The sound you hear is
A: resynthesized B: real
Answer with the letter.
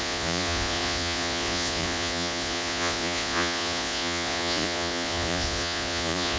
A